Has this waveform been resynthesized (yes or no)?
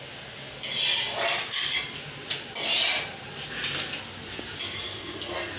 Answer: no